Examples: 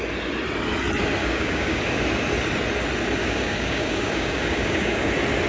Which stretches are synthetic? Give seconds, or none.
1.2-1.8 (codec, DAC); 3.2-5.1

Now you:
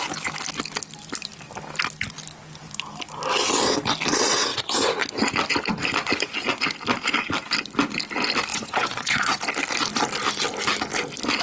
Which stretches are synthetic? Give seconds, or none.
8.5-9.4 (vocoder, WaveNeXt)

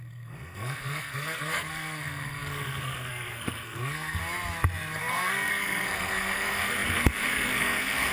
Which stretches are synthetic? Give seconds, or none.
0.0-4.2 (codec, SNAC); 5.0-8.1

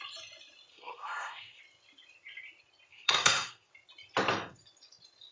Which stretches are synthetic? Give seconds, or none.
0.7-1.6 (codec, SNAC); 2.9-3.7

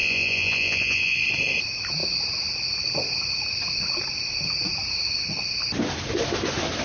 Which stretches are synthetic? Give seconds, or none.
0.0-1.2 (vocoder, Vocos)

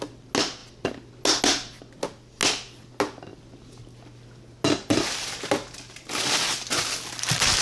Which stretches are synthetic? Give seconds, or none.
none

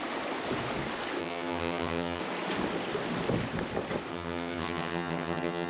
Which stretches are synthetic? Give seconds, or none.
1.2-2.2 (vocoder, HiFi-GAN); 4.1-5.7

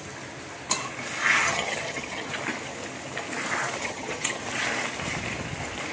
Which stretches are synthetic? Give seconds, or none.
1.4-2.3 (vocoder, HiFi-GAN); 3.8-4.4